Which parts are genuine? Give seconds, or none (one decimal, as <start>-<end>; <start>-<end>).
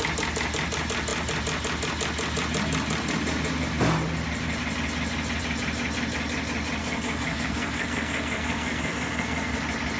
0.0-6.8; 9.6-10.0